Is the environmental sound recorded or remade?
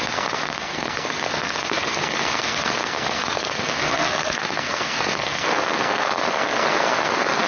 remade